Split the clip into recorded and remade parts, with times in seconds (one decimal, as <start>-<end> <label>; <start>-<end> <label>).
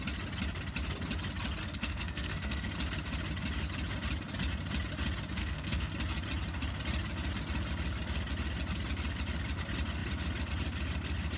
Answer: 0.0-1.6 recorded; 1.6-2.7 remade; 2.7-5.4 recorded; 5.4-5.9 remade; 5.9-11.4 recorded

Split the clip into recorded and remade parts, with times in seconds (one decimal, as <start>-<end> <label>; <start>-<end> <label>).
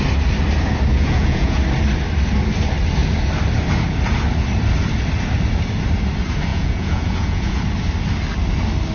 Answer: 0.0-0.9 recorded; 0.9-1.6 remade; 1.6-6.5 recorded; 6.5-7.6 remade; 7.6-8.9 recorded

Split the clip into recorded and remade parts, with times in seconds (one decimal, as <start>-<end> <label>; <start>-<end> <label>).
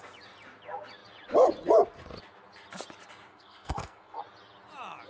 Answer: 0.0-3.3 recorded; 3.3-4.2 remade; 4.2-5.1 recorded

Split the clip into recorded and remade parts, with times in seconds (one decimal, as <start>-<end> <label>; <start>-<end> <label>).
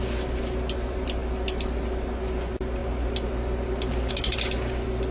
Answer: 0.0-5.1 recorded